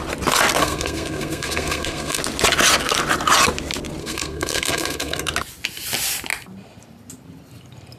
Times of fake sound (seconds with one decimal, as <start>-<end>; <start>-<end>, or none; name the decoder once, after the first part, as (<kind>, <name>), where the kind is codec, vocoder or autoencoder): 0.6-2.2 (codec, SNAC); 4.0-5.3